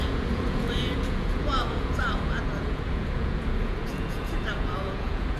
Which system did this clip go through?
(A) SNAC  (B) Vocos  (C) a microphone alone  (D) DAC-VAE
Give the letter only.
B